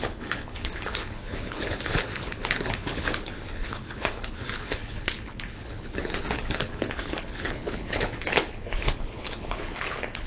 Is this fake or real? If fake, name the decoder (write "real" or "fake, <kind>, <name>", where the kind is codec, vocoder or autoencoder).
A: fake, codec, HILCodec